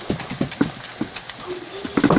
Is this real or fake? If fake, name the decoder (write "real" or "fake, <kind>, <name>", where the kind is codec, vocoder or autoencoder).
real